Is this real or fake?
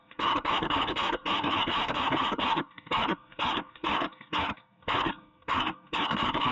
fake